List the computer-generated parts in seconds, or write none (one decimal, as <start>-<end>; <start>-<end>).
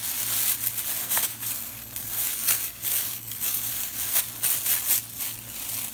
1.0-4.2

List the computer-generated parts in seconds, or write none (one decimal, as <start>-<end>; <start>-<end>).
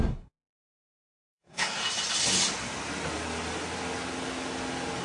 0.0-1.8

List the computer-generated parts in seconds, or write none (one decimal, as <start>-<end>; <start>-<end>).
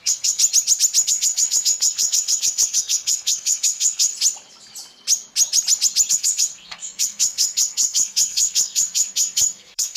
0.0-0.4; 1.0-4.1; 6.1-10.0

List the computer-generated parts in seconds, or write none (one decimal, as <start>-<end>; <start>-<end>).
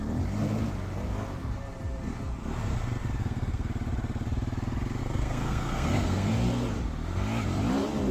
3.2-3.7; 5.0-6.3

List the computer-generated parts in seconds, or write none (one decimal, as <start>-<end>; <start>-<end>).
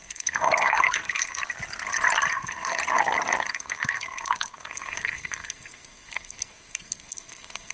0.0-1.4; 2.3-2.8; 3.5-7.7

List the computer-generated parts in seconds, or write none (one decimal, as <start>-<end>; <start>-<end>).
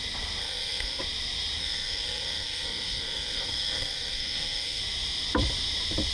0.4-1.0; 1.6-4.8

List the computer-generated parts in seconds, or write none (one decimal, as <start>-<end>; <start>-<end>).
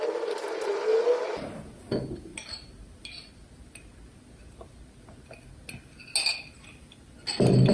none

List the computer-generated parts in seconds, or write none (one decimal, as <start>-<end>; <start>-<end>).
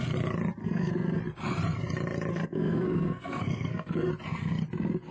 0.6-1.2; 2.3-4.1